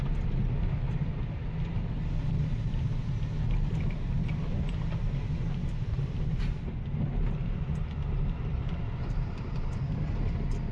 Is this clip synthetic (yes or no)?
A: no